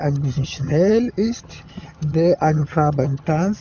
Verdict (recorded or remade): remade